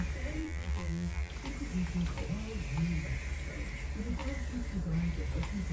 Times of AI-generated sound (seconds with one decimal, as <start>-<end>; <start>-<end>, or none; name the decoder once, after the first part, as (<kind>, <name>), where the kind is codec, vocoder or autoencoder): 0.4-1.3 (vocoder, BigVGAN v2)